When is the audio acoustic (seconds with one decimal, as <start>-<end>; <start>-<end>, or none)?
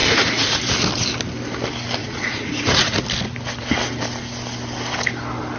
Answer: 0.6-2.0; 3.0-5.6